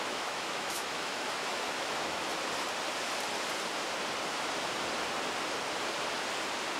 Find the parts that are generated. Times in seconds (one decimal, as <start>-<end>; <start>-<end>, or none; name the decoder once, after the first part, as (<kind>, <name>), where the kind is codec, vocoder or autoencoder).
0.0-2.3 (autoencoder, DAC-VAE)